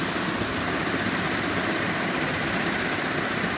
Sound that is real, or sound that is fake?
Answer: real